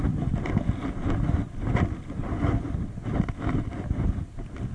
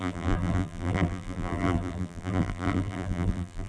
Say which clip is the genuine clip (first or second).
first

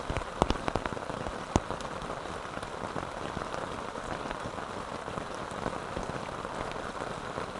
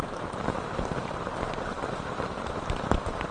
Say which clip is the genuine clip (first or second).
first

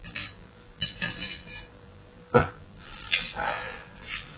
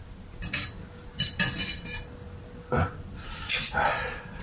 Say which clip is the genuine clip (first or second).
second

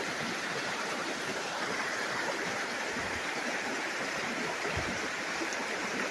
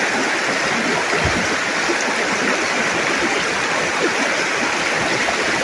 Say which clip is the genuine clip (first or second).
second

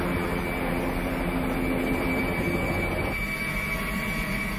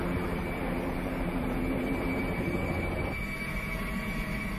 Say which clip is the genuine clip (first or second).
first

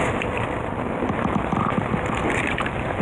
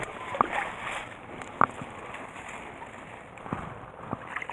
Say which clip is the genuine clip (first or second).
first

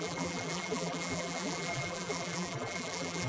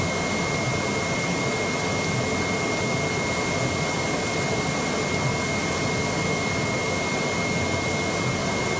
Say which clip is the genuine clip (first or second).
second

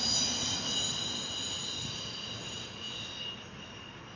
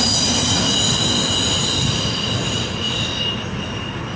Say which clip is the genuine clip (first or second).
first